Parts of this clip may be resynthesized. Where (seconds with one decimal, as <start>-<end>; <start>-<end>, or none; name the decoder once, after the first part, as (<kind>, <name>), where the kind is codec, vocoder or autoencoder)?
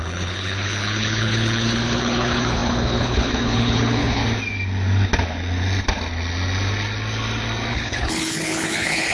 0.0-4.2 (codec, HILCodec); 7.7-9.1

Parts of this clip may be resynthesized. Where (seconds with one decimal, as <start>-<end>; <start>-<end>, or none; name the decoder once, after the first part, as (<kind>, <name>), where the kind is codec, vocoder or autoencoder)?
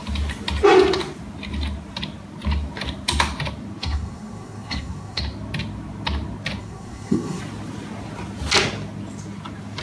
3.8-5.2 (codec, SNAC); 6.6-7.4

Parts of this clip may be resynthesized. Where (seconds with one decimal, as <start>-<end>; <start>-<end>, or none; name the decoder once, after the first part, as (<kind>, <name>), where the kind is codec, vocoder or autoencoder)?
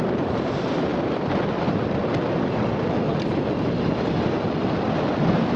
0.0-0.9 (vocoder, BigVGAN v2); 1.6-2.0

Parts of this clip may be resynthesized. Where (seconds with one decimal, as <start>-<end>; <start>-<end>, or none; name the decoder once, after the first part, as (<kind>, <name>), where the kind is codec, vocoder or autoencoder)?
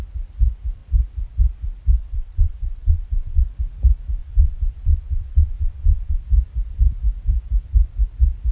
2.0-3.4 (vocoder, WaveNeXt); 4.2-6.2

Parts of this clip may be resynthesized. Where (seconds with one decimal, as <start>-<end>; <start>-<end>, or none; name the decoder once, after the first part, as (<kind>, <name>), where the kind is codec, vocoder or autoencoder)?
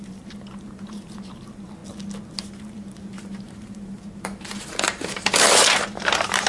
0.0-1.8 (vocoder, BigVGAN v2); 2.4-6.5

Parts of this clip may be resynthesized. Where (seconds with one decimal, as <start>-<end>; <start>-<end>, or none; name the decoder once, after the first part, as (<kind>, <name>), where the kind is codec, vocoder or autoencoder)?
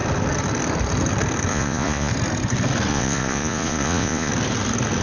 1.5-2.1 (vocoder, Vocos); 2.9-4.3